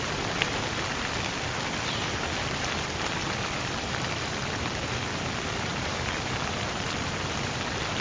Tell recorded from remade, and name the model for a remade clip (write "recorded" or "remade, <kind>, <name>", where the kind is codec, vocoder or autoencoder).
remade, vocoder, BigVGAN v2